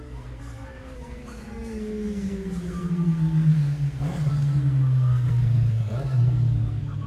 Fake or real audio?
fake